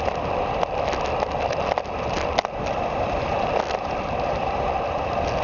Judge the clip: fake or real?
real